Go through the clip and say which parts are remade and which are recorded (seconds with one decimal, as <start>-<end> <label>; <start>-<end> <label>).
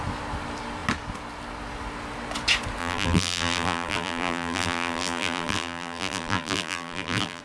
0.0-2.8 recorded; 2.8-7.4 remade